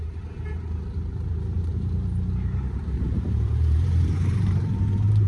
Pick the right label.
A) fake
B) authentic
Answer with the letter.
A